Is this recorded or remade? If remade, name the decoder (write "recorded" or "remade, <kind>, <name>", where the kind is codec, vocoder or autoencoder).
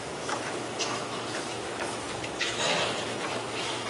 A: remade, autoencoder, DAC-VAE